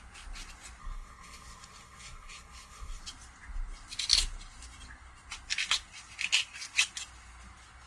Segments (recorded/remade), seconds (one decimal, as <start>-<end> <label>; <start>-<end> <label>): 0.0-0.8 recorded; 0.8-3.0 remade; 3.0-7.9 recorded